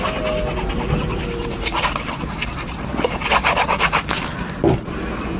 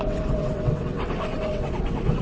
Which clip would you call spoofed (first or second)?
second